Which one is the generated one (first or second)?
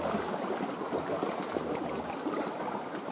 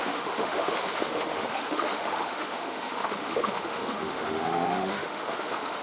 second